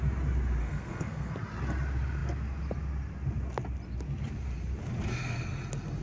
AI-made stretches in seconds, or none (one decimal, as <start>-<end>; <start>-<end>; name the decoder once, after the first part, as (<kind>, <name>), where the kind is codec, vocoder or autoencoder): 0.6-1.3 (codec, SNAC)